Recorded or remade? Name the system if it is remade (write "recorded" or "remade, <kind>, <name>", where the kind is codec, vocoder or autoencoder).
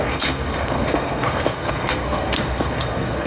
remade, codec, SNAC